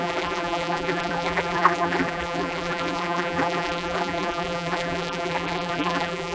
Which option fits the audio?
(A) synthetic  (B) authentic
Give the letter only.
A